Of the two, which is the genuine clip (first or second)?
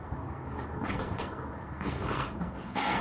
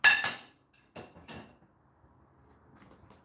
second